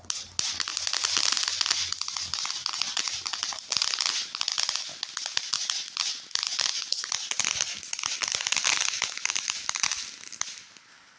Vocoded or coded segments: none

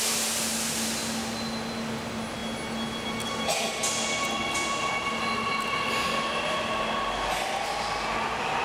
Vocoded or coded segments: none